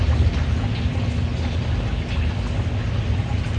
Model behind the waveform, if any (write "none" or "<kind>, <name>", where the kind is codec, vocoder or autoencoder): none